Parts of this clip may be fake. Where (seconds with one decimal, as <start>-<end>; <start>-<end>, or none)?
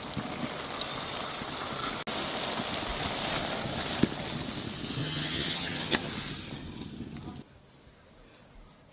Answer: 5.0-6.1